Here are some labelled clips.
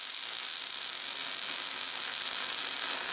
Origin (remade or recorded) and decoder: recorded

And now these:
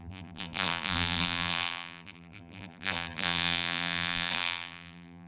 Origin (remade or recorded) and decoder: remade, vocoder, BigVGAN v2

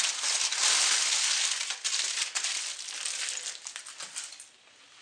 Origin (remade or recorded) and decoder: recorded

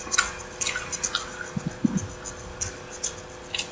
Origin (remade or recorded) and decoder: recorded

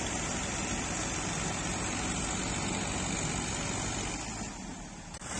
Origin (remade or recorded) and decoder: recorded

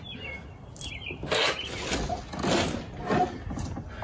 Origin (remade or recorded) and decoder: recorded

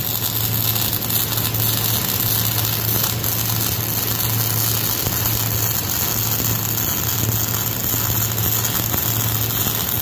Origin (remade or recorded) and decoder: recorded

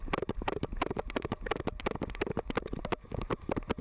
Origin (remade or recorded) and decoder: recorded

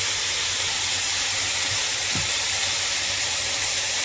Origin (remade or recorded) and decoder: remade, vocoder, BigVGAN v2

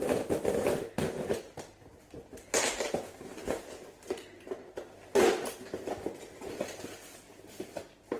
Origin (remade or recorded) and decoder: recorded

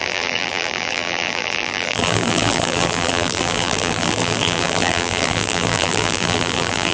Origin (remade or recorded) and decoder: remade, vocoder, BigVGAN v2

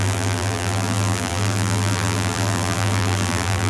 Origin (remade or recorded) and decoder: remade, vocoder, BigVGAN v2